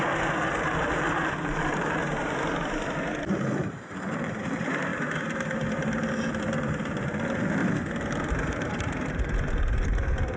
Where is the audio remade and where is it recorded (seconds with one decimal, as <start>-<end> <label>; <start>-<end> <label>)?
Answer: 0.0-2.2 remade; 2.2-3.7 recorded; 3.7-4.9 remade; 4.9-6.4 recorded; 6.4-7.6 remade; 7.6-8.3 recorded; 8.3-10.4 remade